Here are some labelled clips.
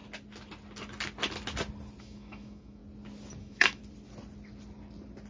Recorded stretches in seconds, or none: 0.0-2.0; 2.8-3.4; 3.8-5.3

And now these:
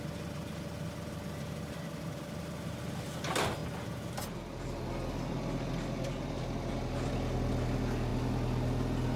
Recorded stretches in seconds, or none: 0.0-9.2